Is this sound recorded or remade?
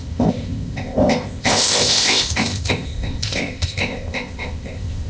remade